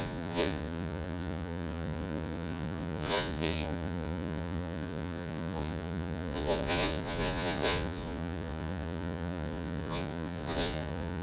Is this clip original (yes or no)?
no